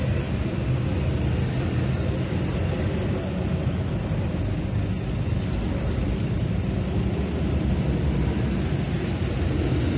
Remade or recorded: recorded